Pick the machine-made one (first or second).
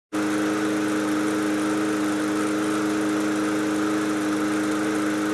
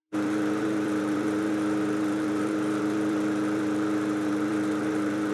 second